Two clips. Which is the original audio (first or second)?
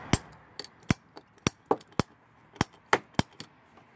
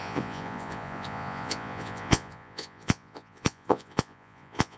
first